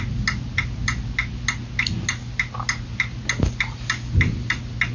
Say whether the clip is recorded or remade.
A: recorded